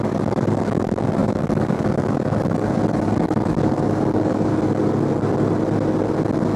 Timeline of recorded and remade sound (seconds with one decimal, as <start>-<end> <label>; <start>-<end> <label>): 0.0-4.5 remade; 4.5-6.6 recorded